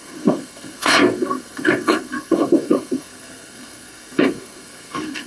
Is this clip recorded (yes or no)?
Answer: no